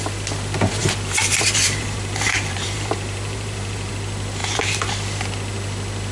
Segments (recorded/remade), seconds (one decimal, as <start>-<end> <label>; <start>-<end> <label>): 0.0-0.8 recorded; 0.8-3.9 remade; 3.9-4.4 recorded; 4.4-4.9 remade; 4.9-6.1 recorded